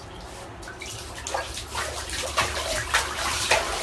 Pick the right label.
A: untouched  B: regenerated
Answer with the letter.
A